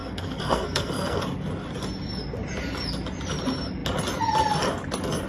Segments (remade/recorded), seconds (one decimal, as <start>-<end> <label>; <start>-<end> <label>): 0.0-1.2 remade; 1.2-5.3 recorded